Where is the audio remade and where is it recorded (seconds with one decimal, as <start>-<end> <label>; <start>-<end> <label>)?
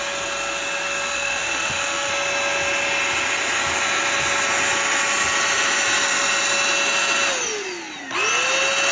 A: 0.0-1.1 recorded; 1.1-2.1 remade; 2.1-8.9 recorded